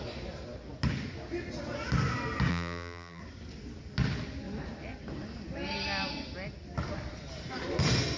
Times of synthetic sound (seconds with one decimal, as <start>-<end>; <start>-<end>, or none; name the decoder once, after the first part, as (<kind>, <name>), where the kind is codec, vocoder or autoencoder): 2.5-3.2 (vocoder, BigVGAN v2)